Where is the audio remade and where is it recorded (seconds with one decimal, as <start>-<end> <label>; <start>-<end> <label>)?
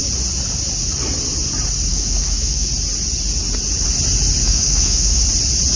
0.0-1.9 recorded; 1.9-2.7 remade; 2.7-4.4 recorded; 4.4-5.2 remade; 5.2-5.8 recorded